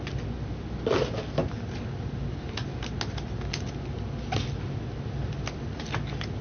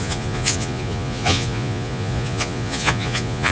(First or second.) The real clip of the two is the first